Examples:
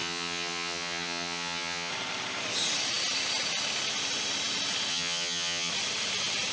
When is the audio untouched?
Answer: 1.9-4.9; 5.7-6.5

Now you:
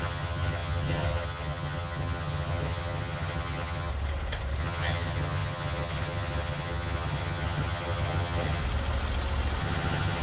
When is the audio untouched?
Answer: 3.9-4.6; 8.6-9.6